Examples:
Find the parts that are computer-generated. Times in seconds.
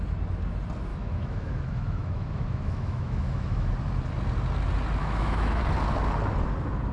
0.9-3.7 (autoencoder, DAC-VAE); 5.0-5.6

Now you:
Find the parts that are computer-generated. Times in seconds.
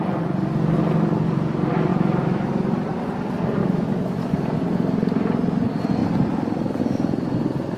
1.9-2.5 (autoencoder, DAC-VAE); 3.6-4.2